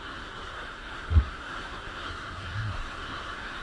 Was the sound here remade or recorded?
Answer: remade